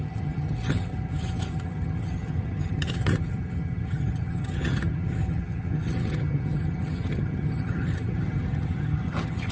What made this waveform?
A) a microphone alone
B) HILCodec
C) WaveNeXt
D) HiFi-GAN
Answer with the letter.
D